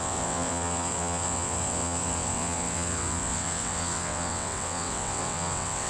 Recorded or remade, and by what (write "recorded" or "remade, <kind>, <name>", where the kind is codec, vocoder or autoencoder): remade, vocoder, WaveNeXt